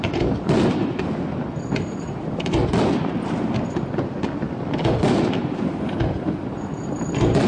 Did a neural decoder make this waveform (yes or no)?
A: no